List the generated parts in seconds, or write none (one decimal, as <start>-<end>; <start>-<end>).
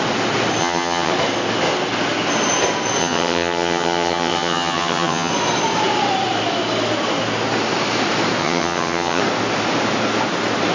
0.6-1.1; 3.0-5.3; 8.4-9.2